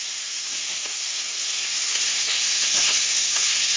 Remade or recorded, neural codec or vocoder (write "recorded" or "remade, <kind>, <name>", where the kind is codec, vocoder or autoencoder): remade, codec, SNAC